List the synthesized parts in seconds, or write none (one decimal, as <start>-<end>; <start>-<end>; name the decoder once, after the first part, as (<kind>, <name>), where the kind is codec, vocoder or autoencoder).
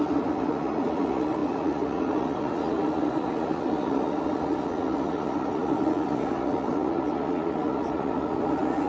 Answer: 0.0-8.9 (vocoder, Vocos)